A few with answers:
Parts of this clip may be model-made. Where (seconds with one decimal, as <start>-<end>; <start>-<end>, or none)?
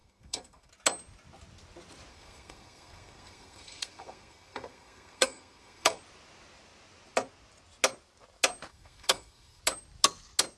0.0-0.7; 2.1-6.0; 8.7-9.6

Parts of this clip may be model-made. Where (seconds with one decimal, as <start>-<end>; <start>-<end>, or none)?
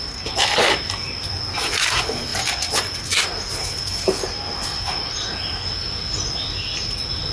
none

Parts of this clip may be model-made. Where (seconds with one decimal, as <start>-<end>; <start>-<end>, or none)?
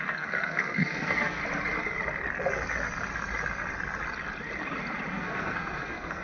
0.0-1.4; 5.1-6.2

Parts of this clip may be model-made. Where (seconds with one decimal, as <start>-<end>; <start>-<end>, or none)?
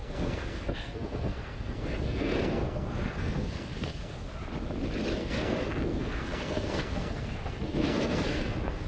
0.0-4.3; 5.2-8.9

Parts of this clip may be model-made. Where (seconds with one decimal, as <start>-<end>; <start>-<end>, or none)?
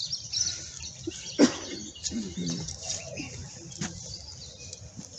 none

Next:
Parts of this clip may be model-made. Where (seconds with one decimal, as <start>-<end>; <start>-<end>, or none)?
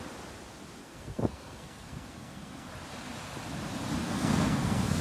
0.8-2.7; 4.0-5.0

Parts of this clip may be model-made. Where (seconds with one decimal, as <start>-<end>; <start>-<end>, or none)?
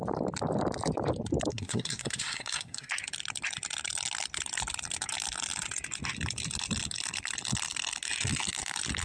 1.5-2.9